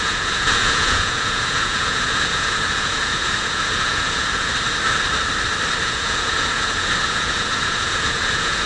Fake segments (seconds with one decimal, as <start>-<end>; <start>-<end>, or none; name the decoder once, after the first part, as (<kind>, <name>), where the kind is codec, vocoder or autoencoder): 0.0-4.5 (vocoder, Vocos); 5.8-8.7